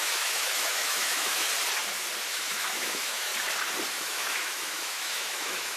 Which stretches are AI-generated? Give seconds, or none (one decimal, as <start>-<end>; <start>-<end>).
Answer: 0.0-1.5; 2.2-3.3; 3.9-5.8